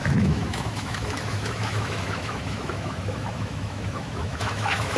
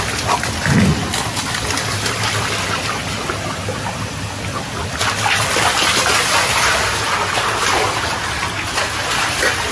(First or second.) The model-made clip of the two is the first